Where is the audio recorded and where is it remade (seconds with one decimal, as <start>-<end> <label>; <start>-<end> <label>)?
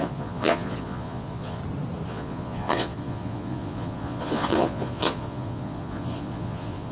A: 0.0-1.6 remade; 1.6-2.1 recorded; 2.1-6.9 remade